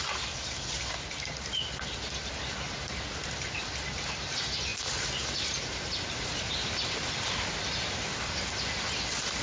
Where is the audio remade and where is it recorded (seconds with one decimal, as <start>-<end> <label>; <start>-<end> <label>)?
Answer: 0.0-9.4 recorded